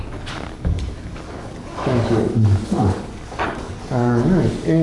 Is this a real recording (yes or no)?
no